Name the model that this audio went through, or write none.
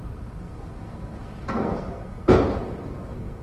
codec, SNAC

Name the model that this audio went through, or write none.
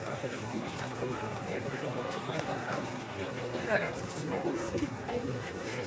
codec, SNAC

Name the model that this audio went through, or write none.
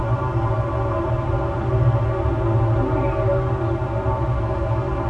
none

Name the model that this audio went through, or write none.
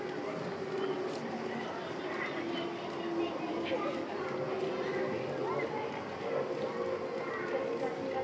none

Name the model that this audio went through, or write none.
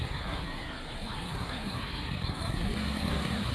codec, SNAC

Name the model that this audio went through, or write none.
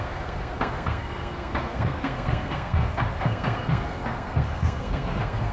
codec, SNAC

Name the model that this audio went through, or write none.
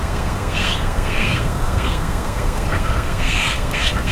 codec, SNAC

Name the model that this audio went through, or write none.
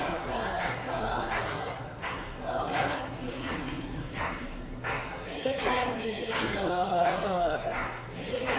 codec, SNAC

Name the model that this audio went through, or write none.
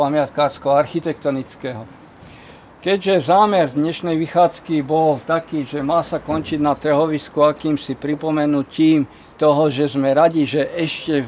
none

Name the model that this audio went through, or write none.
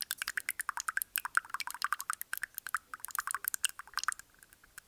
none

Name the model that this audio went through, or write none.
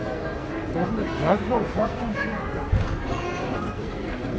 codec, SNAC